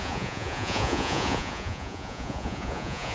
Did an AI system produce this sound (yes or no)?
yes